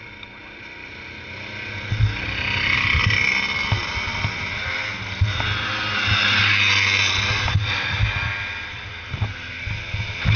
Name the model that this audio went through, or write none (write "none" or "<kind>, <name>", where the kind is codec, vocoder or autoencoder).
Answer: none